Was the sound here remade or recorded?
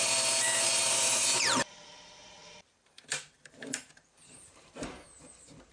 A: remade